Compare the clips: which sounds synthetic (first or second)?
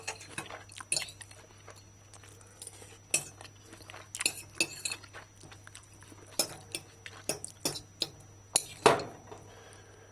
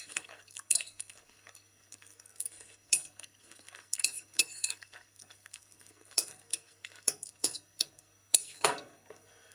second